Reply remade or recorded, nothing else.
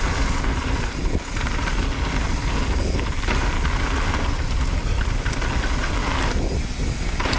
recorded